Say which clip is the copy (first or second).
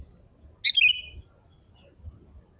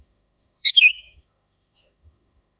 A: second